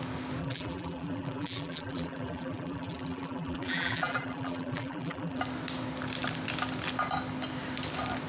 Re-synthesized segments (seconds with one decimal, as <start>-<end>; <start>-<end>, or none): 0.4-5.4